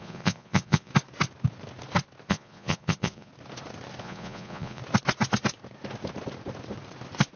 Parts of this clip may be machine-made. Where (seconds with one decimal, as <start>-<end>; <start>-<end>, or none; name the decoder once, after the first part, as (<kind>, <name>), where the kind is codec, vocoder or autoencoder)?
0.0-0.9 (vocoder, Vocos); 2.3-3.3; 4.0-4.8